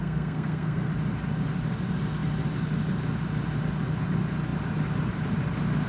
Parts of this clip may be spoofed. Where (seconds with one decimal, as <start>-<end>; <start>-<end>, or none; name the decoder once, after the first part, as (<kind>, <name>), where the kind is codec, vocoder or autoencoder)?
0.0-0.9 (codec, SNAC)